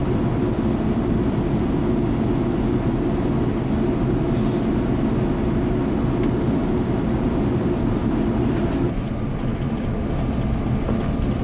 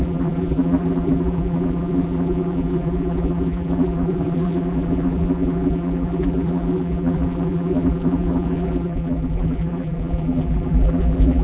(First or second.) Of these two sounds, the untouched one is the first